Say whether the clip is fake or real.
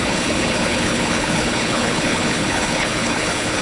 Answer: fake